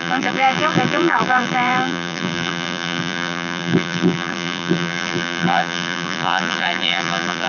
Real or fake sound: fake